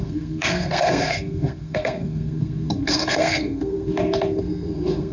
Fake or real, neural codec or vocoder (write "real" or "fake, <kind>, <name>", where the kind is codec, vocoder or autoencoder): fake, codec, SNAC